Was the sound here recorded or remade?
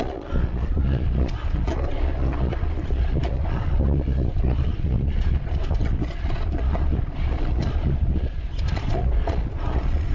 remade